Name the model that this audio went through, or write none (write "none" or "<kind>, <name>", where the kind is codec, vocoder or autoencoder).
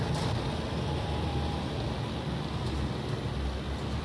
none